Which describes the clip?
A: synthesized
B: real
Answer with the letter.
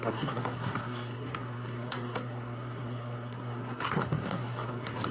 A